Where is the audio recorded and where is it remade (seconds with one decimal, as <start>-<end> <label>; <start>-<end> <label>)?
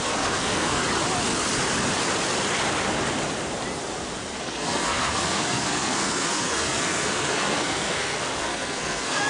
0.0-0.8 remade; 0.8-4.4 recorded; 4.4-9.3 remade